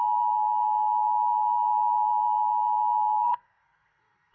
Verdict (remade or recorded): remade